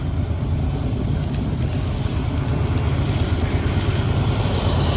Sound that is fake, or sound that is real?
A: real